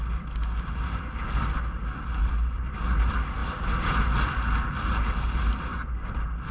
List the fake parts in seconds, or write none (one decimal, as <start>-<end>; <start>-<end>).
2.2-2.7; 3.4-3.9